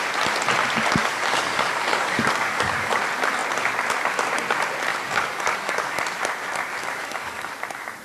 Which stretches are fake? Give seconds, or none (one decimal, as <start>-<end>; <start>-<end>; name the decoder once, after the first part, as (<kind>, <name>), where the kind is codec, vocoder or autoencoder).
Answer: 1.0-3.0 (codec, DAC); 4.9-6.0; 6.8-7.5